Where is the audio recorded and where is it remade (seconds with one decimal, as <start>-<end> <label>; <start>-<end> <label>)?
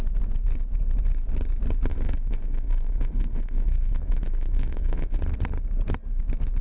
0.0-1.9 recorded; 1.9-5.2 remade; 5.2-6.6 recorded